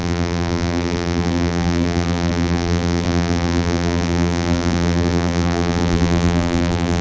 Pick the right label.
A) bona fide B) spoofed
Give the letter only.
B